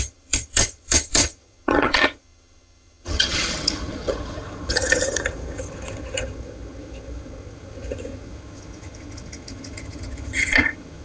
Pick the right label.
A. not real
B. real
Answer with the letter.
A